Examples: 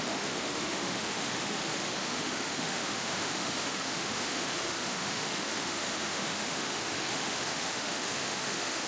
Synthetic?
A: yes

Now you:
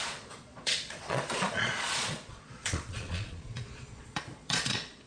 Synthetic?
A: yes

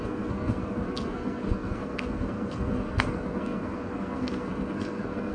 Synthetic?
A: yes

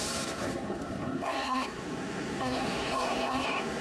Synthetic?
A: yes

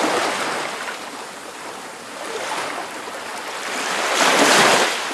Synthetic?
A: no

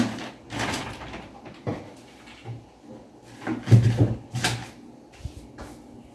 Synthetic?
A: no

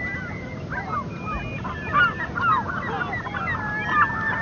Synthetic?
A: no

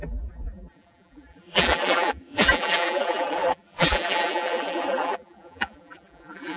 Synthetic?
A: yes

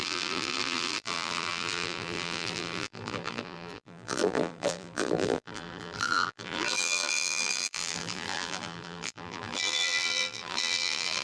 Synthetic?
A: yes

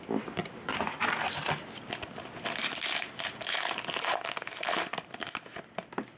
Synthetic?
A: no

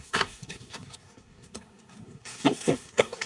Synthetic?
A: yes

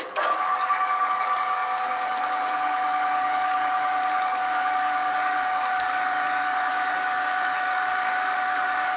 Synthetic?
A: yes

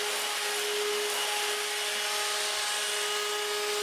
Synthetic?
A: no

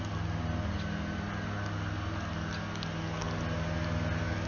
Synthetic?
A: no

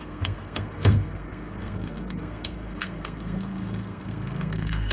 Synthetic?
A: yes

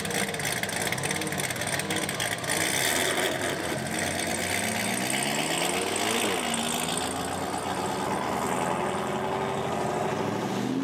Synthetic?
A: no